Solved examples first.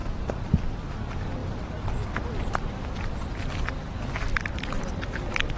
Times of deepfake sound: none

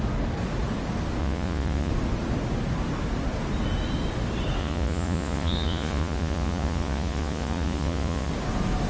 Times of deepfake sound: 1.2-1.9 (vocoder, Vocos); 4.6-8.3